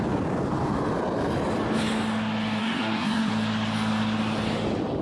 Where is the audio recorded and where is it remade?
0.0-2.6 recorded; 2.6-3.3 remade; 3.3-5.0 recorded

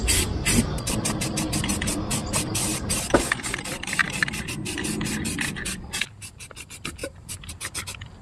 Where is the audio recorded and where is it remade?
0.0-7.0 recorded; 7.0-7.5 remade; 7.5-8.2 recorded

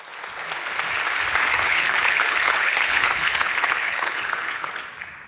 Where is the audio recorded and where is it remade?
0.0-1.5 recorded; 1.5-4.7 remade; 4.7-5.3 recorded

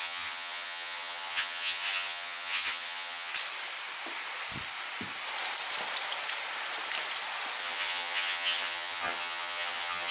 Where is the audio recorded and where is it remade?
0.0-3.3 remade; 3.3-7.6 recorded; 7.6-10.1 remade

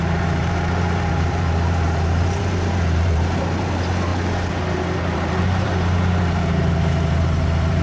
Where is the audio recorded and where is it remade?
0.0-4.1 remade; 4.1-4.7 recorded; 4.7-7.8 remade

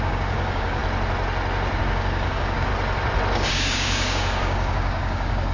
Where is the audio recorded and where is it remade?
0.0-0.8 remade; 0.8-1.8 recorded; 1.8-2.7 remade; 2.7-3.5 recorded; 3.5-5.5 remade